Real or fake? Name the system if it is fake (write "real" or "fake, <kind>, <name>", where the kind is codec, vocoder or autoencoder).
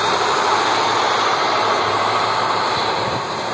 fake, vocoder, BigVGAN v2